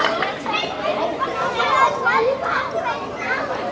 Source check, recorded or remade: recorded